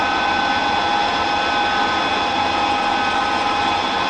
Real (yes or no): yes